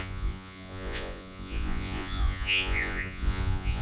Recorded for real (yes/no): no